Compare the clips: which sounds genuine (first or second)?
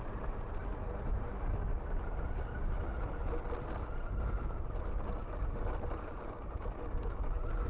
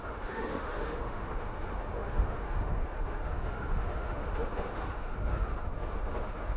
first